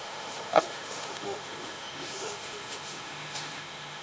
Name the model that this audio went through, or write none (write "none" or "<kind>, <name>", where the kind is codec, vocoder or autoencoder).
autoencoder, DAC-VAE